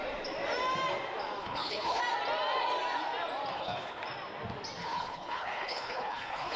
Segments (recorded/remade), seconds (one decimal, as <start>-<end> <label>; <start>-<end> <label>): 0.0-1.4 recorded; 1.4-2.0 remade; 2.0-3.5 recorded; 3.5-4.0 remade; 4.0-4.8 recorded; 4.8-6.6 remade